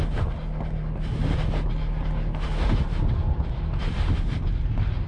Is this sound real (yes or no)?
yes